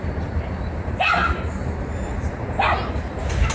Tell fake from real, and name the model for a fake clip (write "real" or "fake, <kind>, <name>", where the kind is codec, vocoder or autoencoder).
real